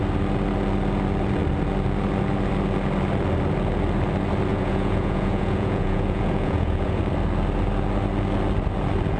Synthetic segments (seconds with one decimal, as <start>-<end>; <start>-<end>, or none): 4.5-7.0